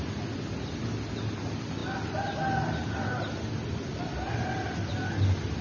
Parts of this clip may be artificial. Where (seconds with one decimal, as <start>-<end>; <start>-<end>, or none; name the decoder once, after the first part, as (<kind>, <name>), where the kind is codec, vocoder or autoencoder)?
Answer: none